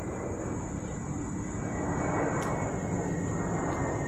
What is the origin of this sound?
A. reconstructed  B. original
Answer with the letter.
B